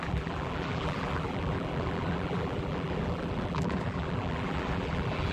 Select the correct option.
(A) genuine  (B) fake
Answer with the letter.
B